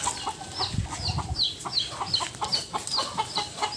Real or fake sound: real